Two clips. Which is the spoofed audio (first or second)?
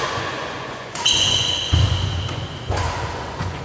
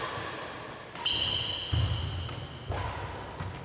first